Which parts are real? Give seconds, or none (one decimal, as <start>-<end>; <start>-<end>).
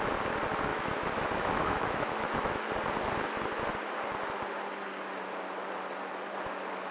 0.0-0.7; 2.7-6.9